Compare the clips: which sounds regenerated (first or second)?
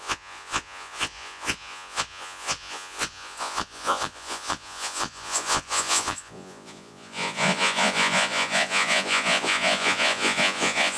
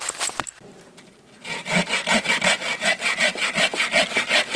first